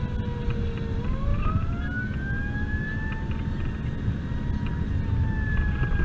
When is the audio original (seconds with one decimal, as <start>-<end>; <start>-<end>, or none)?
0.0-6.0